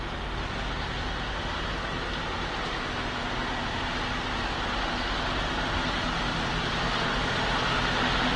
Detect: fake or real real